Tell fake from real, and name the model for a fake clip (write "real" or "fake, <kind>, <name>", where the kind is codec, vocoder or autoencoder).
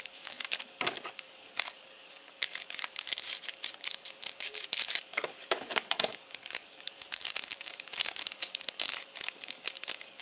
fake, codec, DAC